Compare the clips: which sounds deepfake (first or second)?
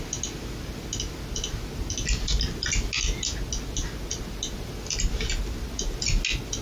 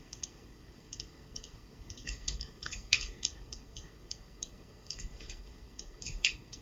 second